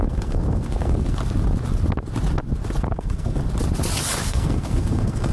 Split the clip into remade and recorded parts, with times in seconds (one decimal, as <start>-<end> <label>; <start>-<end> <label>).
0.0-1.2 remade; 1.2-2.8 recorded; 2.8-3.4 remade; 3.4-4.3 recorded; 4.3-5.3 remade